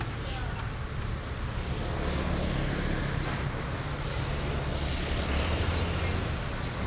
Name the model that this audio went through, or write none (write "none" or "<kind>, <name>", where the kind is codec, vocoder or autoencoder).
none